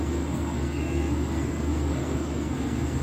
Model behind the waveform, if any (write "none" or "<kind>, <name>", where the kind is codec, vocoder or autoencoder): codec, SNAC